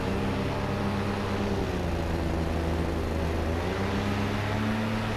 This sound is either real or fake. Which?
real